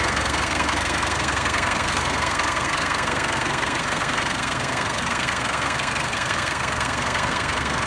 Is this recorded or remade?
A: remade